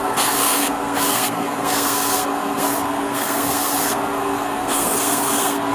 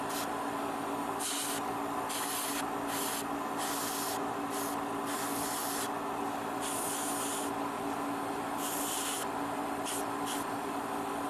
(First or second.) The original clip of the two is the second